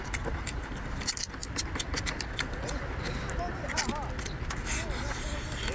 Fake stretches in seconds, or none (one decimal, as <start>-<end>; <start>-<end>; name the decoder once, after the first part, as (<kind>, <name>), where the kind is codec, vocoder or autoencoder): none